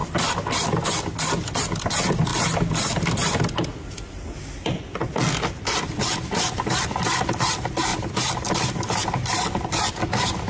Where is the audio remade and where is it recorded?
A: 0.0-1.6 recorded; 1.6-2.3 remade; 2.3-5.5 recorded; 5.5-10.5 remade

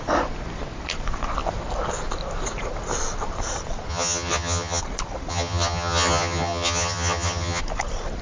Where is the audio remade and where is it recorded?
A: 0.0-3.9 recorded; 3.9-4.8 remade; 4.8-5.3 recorded; 5.3-7.6 remade; 7.6-8.2 recorded

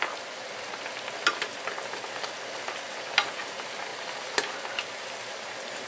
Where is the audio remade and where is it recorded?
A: 0.0-5.9 recorded

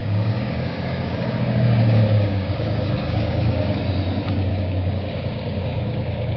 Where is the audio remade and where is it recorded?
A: 0.0-3.8 remade; 3.8-4.5 recorded; 4.5-6.4 remade

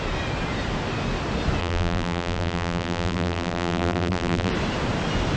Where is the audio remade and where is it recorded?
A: 0.0-1.6 recorded; 1.6-4.5 remade; 4.5-5.4 recorded

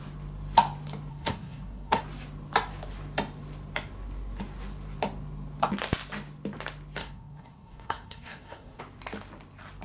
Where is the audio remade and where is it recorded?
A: 0.0-1.1 recorded; 1.1-2.0 remade; 2.0-7.0 recorded; 7.0-8.8 remade; 8.8-9.8 recorded

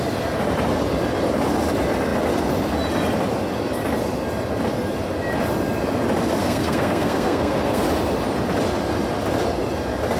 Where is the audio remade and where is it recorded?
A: 0.0-6.4 recorded; 6.4-7.8 remade; 7.8-10.2 recorded